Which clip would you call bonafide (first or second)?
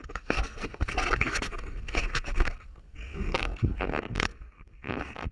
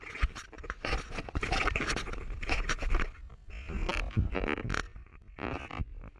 second